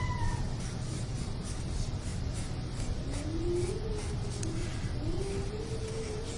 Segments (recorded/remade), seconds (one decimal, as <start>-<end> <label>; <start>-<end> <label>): 0.0-6.4 recorded